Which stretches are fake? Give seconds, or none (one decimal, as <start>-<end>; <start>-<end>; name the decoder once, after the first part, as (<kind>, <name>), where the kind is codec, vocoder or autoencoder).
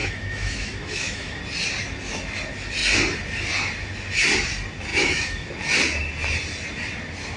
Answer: 0.0-1.4 (autoencoder, DAC-VAE); 4.9-5.5